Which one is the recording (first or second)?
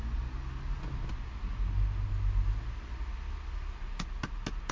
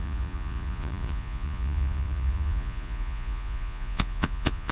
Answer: first